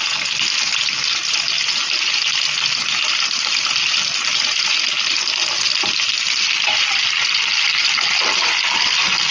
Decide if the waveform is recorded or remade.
recorded